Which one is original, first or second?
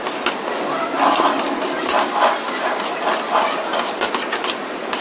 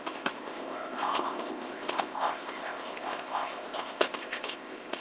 first